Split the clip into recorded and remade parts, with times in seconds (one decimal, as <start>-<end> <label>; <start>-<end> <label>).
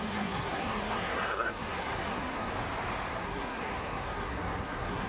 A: 0.0-2.5 remade; 2.5-3.1 recorded; 3.1-5.1 remade